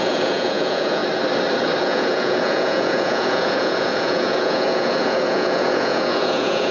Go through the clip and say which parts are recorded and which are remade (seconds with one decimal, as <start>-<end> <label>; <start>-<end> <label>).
0.0-1.0 remade; 1.0-1.8 recorded; 1.8-6.7 remade